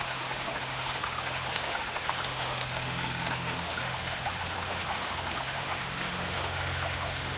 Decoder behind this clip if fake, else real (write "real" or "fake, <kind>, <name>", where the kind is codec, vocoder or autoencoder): fake, autoencoder, DAC-VAE